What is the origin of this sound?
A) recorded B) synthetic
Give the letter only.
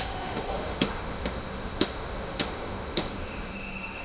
B